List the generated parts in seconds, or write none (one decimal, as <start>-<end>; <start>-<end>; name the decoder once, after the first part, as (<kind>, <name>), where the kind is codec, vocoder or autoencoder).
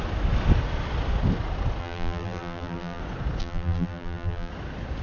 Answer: 1.8-3.0 (vocoder, BigVGAN v2); 3.4-4.5